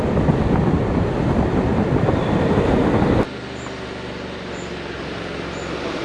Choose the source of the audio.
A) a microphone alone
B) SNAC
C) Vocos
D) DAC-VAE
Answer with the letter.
A